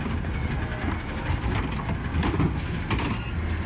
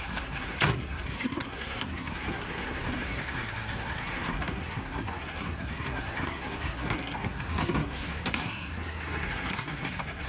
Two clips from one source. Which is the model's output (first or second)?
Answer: second